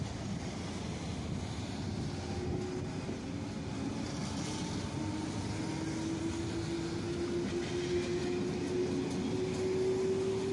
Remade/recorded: recorded